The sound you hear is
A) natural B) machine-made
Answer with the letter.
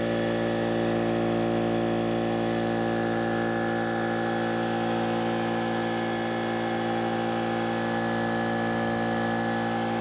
A